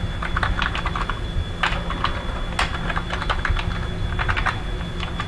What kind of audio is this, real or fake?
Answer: real